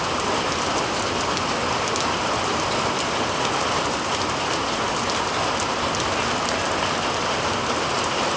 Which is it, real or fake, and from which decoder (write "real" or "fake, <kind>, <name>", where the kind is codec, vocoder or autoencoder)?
real